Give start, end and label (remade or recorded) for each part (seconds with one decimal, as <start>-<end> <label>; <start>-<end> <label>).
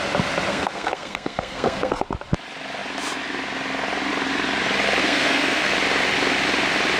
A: 0.0-0.5 recorded; 0.5-2.0 remade; 2.0-5.0 recorded; 5.0-5.7 remade; 5.7-7.0 recorded